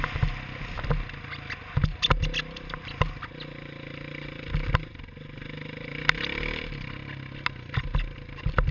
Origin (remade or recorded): recorded